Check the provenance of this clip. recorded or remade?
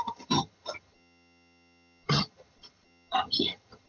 remade